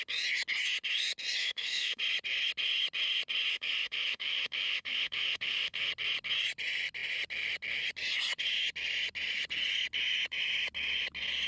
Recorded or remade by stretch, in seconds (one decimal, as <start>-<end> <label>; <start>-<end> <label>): 0.0-1.4 recorded; 1.4-2.0 remade; 2.0-3.5 recorded; 3.5-5.9 remade; 5.9-11.5 recorded